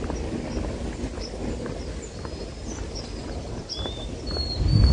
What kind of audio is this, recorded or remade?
recorded